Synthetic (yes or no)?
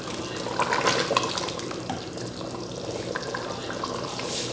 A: no